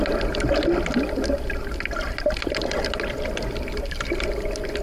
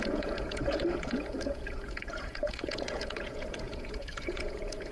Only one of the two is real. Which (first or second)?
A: first